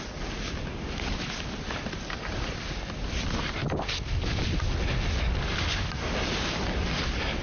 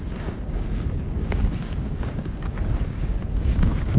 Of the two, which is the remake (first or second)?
second